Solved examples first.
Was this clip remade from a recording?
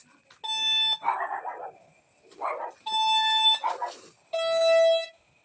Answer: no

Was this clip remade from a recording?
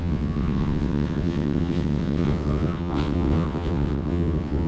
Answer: yes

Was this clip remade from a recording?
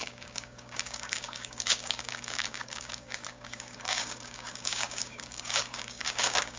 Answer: yes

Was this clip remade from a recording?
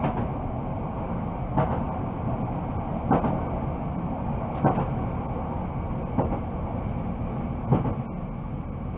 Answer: no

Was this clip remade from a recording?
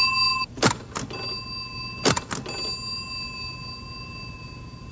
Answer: no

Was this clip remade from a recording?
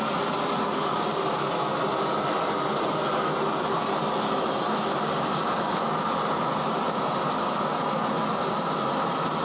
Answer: no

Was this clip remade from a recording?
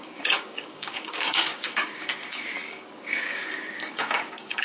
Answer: yes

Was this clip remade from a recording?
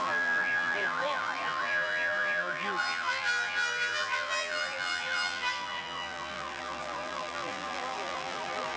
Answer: yes